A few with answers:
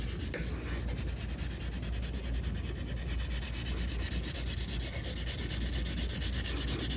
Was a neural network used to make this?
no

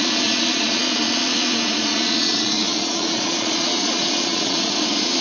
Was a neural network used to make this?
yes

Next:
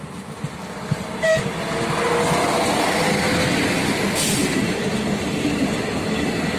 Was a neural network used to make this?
no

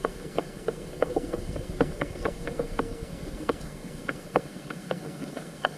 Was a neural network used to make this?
yes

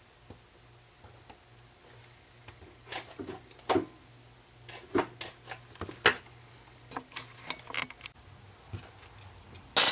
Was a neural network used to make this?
no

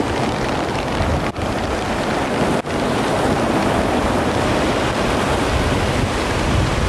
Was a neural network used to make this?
no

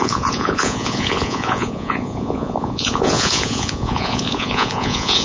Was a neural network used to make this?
yes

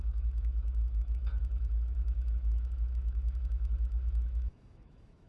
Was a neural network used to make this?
yes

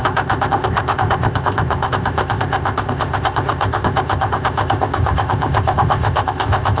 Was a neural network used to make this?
yes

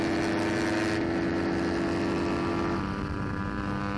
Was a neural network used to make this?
no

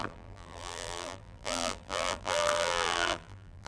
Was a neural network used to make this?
yes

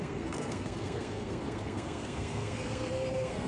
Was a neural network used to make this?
yes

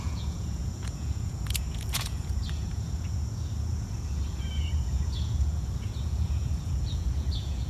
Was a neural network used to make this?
yes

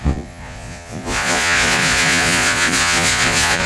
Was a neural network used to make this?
yes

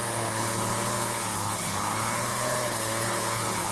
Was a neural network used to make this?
yes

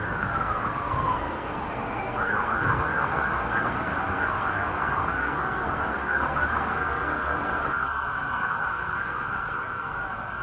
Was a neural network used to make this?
yes